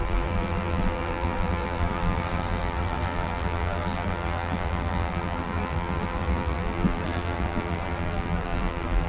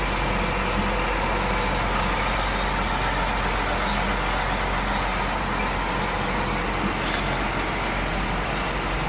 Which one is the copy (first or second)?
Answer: first